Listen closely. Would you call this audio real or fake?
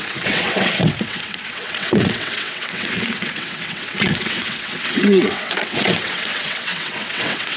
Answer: fake